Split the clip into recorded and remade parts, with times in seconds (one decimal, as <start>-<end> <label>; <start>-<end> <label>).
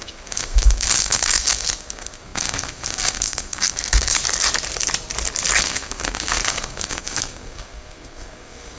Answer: 0.0-4.2 remade; 4.2-5.6 recorded; 5.6-8.8 remade